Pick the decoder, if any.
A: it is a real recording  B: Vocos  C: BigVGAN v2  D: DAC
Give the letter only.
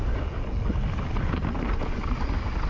A